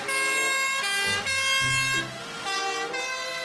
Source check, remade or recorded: recorded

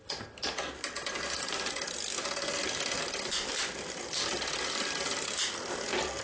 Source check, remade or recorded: recorded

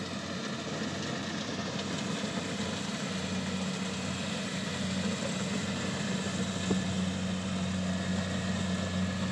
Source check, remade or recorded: recorded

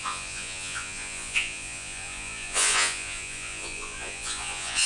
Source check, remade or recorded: remade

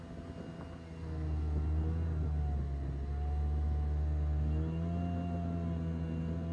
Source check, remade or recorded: recorded